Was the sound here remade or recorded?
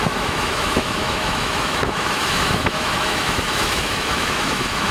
remade